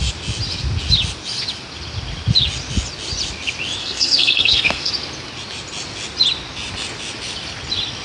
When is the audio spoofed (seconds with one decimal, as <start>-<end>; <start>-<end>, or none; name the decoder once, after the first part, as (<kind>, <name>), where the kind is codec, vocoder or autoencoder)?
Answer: 3.8-4.9 (codec, SNAC)

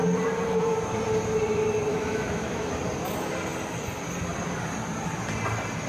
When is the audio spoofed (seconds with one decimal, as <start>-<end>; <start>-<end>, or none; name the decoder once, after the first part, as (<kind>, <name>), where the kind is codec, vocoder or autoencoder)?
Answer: 1.9-2.7 (autoencoder, DAC-VAE)